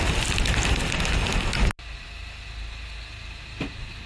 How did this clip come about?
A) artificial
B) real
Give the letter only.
B